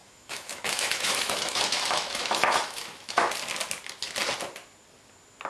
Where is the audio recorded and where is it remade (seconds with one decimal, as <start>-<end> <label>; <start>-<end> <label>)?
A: 0.0-3.3 remade; 3.3-5.5 recorded